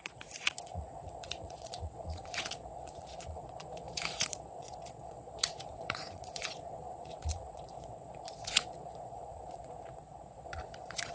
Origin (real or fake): fake